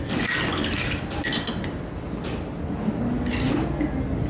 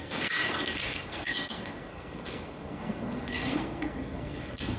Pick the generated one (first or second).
second